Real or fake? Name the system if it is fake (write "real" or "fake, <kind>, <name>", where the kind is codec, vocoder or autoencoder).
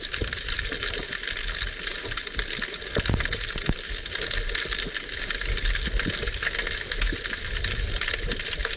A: real